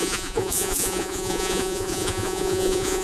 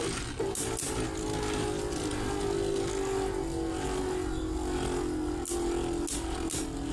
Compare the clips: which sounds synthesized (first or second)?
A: first